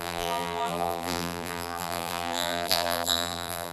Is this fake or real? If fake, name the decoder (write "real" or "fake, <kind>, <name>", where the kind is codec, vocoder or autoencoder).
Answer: fake, vocoder, BigVGAN v2